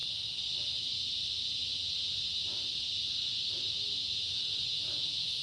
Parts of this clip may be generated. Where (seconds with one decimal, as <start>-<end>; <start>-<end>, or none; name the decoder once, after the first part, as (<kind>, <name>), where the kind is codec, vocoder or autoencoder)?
4.1-5.4 (vocoder, Vocos)